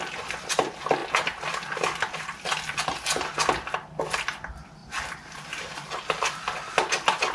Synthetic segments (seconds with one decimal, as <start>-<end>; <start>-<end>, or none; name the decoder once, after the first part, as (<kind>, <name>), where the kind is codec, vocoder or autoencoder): 4.8-6.0 (vocoder, BigVGAN v2)